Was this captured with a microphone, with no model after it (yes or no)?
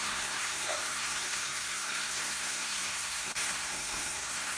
no